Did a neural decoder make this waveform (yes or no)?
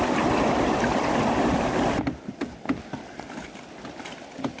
no